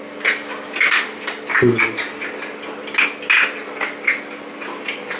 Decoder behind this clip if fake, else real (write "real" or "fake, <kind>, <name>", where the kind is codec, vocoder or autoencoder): real